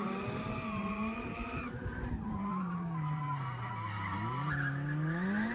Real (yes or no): no